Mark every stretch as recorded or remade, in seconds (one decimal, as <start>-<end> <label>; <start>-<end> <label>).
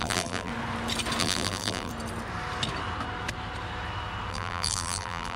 0.0-0.5 remade; 0.5-1.2 recorded; 1.2-1.9 remade; 1.9-4.3 recorded; 4.3-5.4 remade